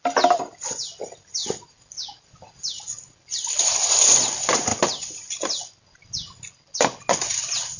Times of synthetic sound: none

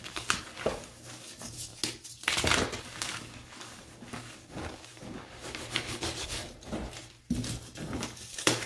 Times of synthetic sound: 0.0-1.7 (codec, DAC); 2.8-6.4; 8.0-8.7

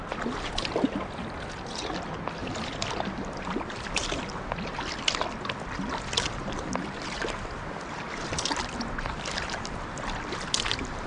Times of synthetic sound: none

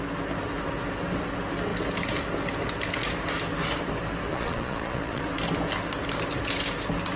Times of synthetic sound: 4.3-5.2 (vocoder, Vocos)